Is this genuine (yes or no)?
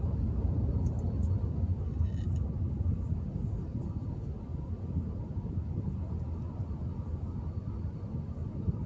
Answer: yes